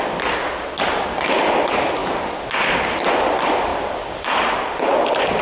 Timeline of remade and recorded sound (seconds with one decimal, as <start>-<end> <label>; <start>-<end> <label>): 0.0-3.7 recorded; 3.7-5.4 remade